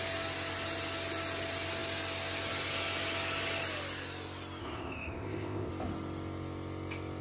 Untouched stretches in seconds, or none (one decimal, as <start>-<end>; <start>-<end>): 0.0-4.6; 5.7-7.2